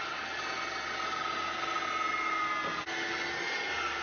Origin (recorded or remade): recorded